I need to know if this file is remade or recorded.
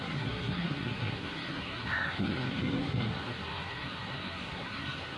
remade